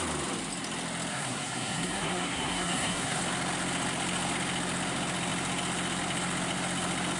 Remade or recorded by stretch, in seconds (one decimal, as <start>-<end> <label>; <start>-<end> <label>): 0.0-1.1 recorded; 1.1-3.2 remade; 3.2-7.2 recorded